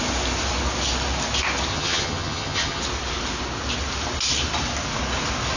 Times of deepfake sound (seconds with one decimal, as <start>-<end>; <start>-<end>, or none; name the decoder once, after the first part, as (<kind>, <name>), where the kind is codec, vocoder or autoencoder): 1.7-2.8 (vocoder, HiFi-GAN)